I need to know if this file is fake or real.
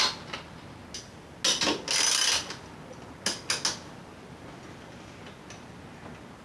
real